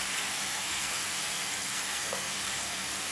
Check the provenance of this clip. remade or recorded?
remade